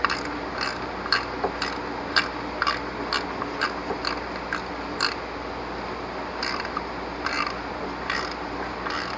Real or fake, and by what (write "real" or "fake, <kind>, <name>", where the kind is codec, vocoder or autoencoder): real